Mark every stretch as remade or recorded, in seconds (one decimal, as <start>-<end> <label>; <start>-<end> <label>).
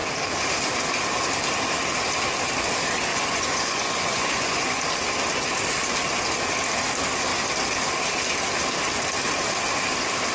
0.0-3.1 recorded; 3.1-4.8 remade; 4.8-10.3 recorded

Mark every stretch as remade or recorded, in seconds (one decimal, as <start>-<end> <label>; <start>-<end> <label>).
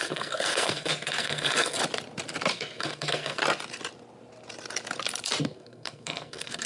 0.0-1.8 remade; 1.8-2.5 recorded; 2.5-3.4 remade; 3.4-5.4 recorded; 5.4-6.7 remade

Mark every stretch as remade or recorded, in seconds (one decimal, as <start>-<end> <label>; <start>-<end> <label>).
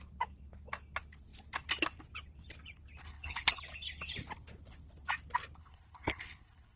0.0-3.0 recorded; 3.0-3.6 remade; 3.6-5.6 recorded; 5.6-6.8 remade